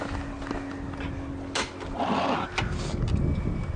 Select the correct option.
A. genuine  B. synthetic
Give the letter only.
A